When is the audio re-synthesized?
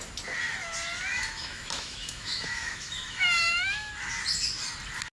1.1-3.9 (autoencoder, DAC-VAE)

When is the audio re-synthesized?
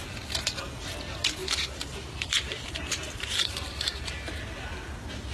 1.4-4.3 (vocoder, BigVGAN v2)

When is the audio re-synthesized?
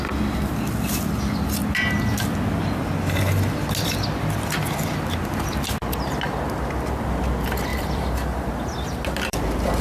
7.7-9.8 (vocoder, BigVGAN v2)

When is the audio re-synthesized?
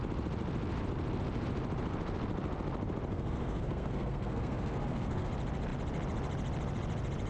3.1-5.3 (codec, SNAC)